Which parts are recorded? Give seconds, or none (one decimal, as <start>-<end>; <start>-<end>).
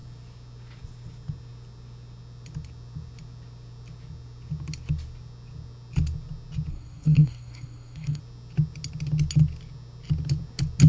0.0-6.7; 8.2-10.9